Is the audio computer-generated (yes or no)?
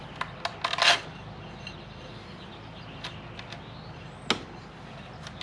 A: no